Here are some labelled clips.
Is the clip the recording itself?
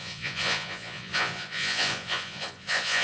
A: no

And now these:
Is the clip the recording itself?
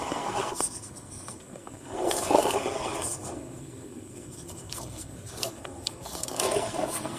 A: no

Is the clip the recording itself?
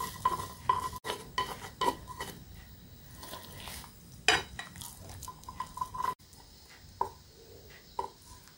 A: yes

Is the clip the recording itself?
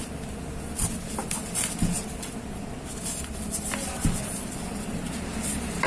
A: yes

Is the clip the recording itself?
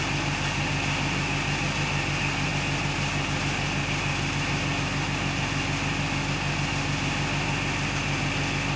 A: yes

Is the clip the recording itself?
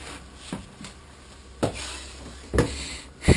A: yes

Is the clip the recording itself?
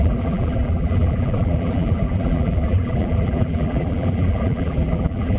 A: no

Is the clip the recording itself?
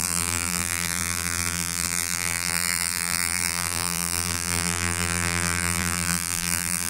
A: no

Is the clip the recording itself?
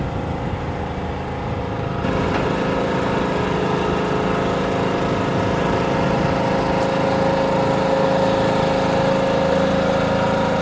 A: yes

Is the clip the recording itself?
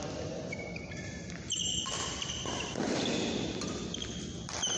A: yes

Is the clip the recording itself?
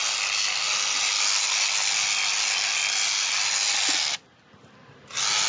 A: yes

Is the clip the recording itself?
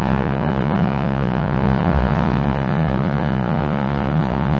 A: no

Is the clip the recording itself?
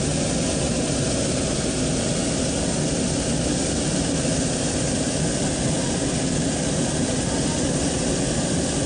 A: yes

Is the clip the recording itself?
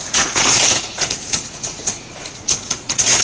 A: no